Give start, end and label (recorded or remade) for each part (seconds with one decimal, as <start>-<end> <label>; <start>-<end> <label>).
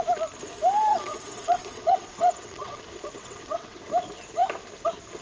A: 0.0-0.9 recorded; 0.9-2.8 remade; 2.8-3.2 recorded; 3.2-3.8 remade; 3.8-5.2 recorded